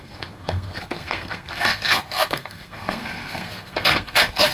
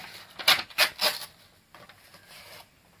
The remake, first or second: first